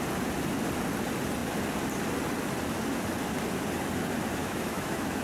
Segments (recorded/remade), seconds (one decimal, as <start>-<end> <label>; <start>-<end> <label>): 0.0-4.4 recorded; 4.4-5.2 remade